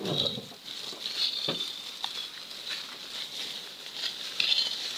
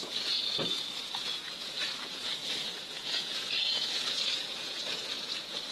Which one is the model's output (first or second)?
second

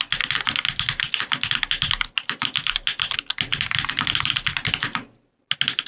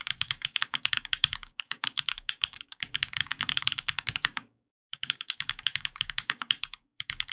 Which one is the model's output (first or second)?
second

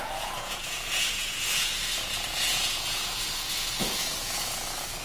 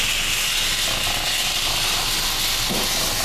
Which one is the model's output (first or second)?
first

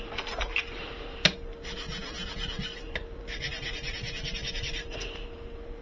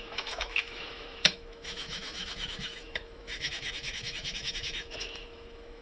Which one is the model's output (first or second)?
second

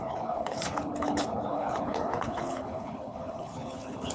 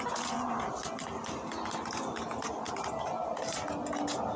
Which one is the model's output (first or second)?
first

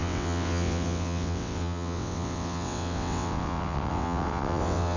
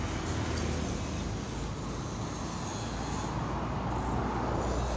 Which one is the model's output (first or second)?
first